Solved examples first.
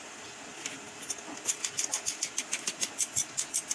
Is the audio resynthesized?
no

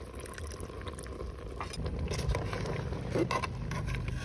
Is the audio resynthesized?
no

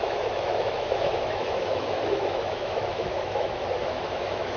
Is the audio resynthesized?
yes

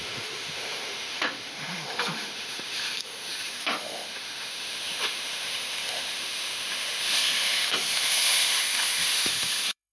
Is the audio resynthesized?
yes